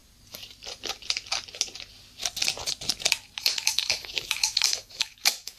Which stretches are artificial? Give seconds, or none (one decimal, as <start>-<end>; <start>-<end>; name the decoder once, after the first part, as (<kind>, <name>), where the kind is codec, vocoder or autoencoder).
3.4-5.6 (autoencoder, DAC-VAE)